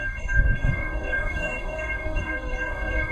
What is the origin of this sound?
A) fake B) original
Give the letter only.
A